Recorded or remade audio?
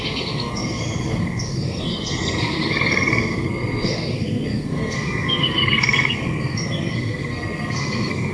remade